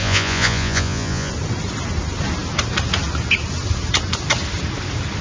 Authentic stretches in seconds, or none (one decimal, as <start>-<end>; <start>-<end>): 1.3-5.2